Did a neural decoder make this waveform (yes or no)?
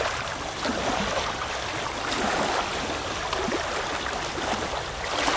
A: no